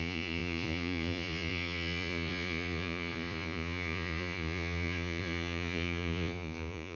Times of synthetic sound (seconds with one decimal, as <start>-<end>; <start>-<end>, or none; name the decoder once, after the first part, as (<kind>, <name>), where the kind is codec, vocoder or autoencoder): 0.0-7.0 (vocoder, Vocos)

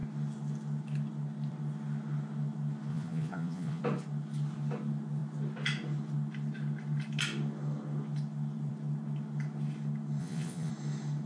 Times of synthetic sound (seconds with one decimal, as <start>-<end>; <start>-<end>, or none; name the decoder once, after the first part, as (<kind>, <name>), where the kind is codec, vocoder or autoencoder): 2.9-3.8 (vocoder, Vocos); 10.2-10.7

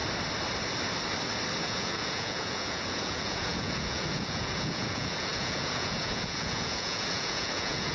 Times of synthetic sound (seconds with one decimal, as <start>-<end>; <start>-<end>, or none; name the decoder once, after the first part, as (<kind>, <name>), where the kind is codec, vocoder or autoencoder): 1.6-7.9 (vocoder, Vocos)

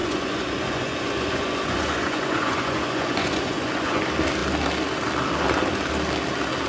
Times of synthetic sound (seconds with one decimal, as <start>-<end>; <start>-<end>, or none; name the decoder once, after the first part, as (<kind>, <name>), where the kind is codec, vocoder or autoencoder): 0.0-4.0 (vocoder, Vocos)

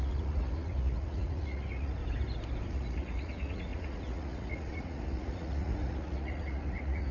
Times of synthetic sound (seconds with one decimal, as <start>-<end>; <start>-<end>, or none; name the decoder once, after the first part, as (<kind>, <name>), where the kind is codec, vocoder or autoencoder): 0.0-2.0 (vocoder, Vocos); 2.7-7.1

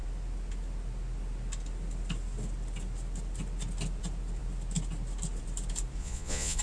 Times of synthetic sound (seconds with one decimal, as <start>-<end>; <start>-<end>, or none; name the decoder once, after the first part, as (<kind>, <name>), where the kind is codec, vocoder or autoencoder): 6.0-6.6 (vocoder, Vocos)